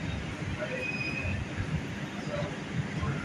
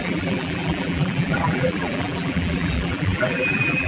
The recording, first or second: first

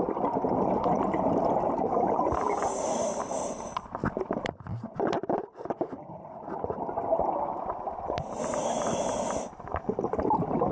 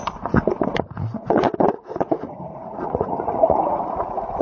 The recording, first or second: first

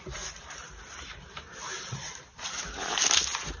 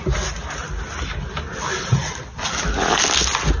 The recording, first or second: second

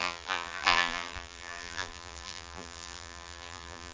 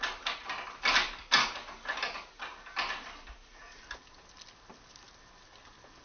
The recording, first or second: second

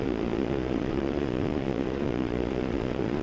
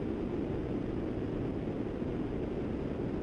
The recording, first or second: second